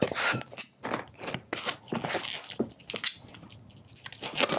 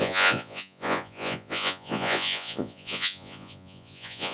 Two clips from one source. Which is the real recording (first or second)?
first